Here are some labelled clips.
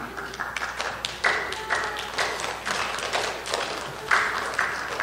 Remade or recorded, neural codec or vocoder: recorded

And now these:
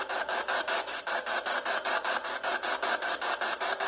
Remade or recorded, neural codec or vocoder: remade, vocoder, BigVGAN v2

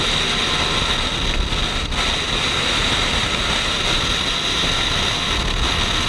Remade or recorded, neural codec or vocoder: recorded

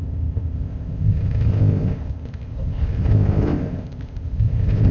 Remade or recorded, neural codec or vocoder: remade, codec, ZipCodec